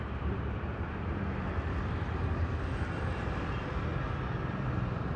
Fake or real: fake